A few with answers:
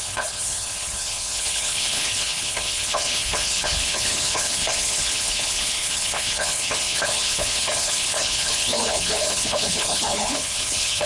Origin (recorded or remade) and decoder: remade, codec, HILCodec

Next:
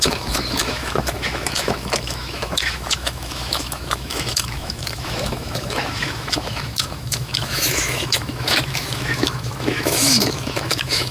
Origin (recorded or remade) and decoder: remade, autoencoder, DAC-VAE